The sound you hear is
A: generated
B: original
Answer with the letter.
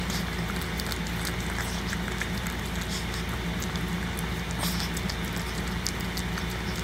B